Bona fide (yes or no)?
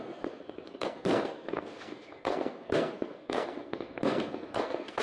no